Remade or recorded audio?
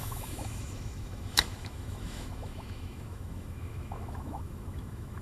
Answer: remade